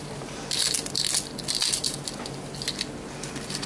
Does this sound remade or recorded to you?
recorded